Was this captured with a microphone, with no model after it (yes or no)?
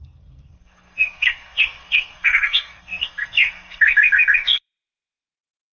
no